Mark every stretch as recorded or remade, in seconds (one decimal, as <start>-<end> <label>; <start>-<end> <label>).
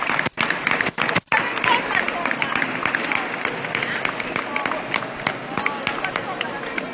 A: 0.0-6.9 recorded